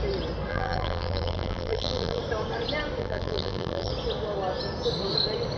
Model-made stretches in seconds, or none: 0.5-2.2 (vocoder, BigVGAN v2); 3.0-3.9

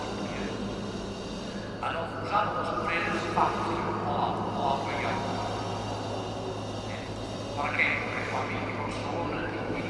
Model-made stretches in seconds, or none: 9.0-9.9 (autoencoder, DAC-VAE)